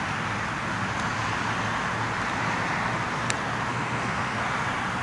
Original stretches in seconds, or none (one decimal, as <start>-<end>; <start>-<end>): 0.0-3.7; 4.4-5.0